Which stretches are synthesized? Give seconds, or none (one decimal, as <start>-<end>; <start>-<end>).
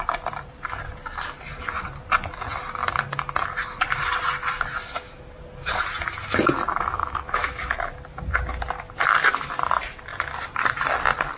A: 7.0-7.7